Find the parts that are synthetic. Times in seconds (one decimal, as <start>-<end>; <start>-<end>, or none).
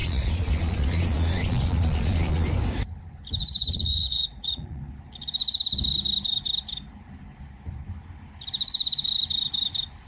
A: 0.0-2.5; 3.4-4.8